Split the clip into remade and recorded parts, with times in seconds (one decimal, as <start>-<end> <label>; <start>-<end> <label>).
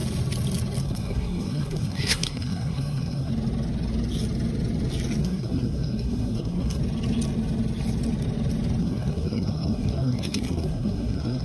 0.0-0.8 recorded; 0.8-3.3 remade; 3.3-5.2 recorded; 5.2-6.8 remade; 6.8-8.8 recorded; 8.8-11.4 remade